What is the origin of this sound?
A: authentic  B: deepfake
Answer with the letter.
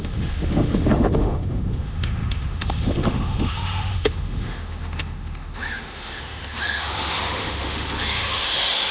B